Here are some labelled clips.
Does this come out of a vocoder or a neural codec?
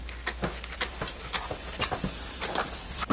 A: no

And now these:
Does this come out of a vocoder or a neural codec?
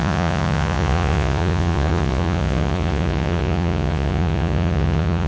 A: yes